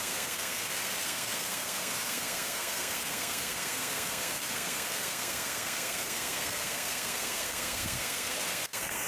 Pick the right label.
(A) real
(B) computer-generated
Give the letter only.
B